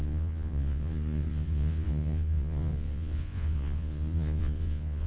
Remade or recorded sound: remade